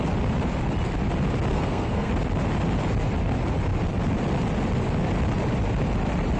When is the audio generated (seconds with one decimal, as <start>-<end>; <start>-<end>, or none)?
1.5-2.1